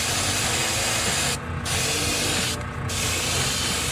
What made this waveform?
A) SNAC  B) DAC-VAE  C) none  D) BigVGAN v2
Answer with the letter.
C